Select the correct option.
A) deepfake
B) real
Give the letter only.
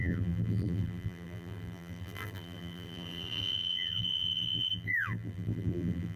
A